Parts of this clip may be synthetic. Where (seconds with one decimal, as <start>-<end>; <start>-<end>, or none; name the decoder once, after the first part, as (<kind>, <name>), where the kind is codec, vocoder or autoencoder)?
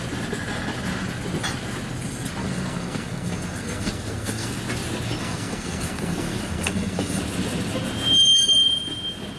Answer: 2.4-4.6 (codec, SNAC); 5.2-7.2